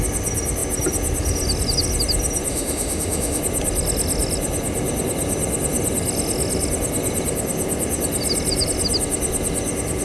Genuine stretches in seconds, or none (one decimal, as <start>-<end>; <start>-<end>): 0.0-2.5; 3.4-10.0